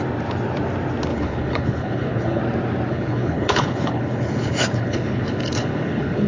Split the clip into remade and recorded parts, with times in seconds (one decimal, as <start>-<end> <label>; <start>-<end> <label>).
0.0-1.1 recorded; 1.1-2.4 remade; 2.4-2.9 recorded; 2.9-6.3 remade